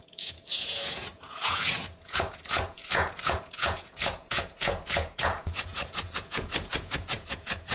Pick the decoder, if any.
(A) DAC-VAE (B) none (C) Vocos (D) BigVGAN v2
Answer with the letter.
C